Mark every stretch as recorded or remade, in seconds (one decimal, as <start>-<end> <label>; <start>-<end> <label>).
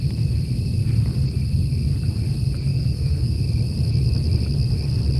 0.0-2.7 recorded; 2.7-3.4 remade; 3.4-5.2 recorded